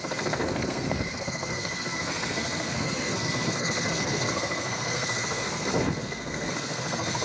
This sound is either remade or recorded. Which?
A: remade